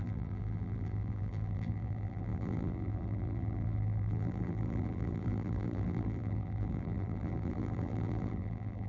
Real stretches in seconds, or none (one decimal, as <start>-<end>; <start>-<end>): none